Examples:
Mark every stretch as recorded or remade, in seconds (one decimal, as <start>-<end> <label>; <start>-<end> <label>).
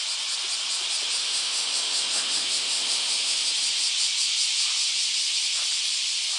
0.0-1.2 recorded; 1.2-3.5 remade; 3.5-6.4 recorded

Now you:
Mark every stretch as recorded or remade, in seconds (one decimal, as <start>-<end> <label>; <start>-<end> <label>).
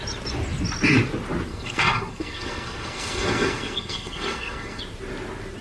0.0-1.5 recorded; 1.5-4.8 remade; 4.8-5.6 recorded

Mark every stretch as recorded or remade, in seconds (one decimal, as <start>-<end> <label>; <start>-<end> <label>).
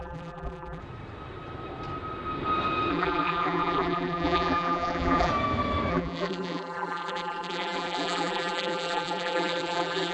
0.0-0.8 remade; 0.8-2.9 recorded; 2.9-5.3 remade; 5.3-5.9 recorded; 5.9-10.1 remade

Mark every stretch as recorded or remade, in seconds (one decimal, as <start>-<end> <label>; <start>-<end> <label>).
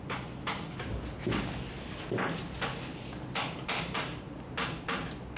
0.0-5.4 recorded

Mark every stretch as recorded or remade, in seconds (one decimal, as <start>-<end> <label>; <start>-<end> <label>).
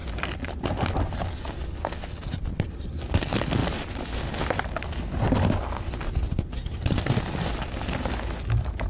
0.0-8.9 recorded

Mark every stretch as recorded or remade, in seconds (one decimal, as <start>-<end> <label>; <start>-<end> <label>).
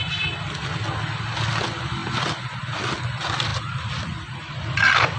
0.0-5.2 recorded